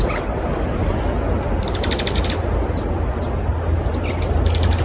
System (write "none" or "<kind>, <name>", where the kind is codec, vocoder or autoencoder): none